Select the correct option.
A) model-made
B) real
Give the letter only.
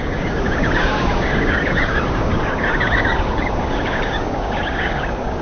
A